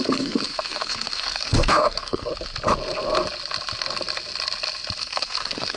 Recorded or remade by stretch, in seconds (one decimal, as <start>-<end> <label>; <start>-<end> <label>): 0.0-2.3 remade; 2.3-5.0 recorded; 5.0-5.8 remade